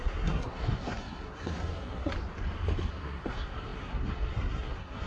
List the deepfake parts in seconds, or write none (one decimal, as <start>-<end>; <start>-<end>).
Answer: 0.0-2.1; 2.9-5.1